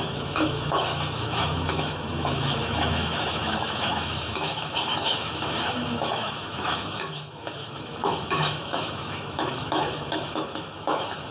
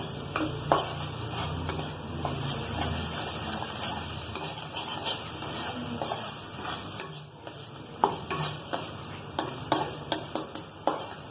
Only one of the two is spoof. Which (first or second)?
first